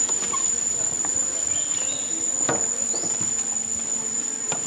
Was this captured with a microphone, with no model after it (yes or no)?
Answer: yes